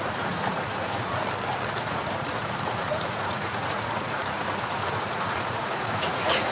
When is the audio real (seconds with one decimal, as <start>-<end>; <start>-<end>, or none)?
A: 1.2-1.8